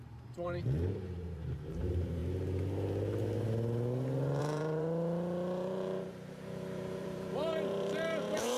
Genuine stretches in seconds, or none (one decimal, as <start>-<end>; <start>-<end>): 2.2-4.4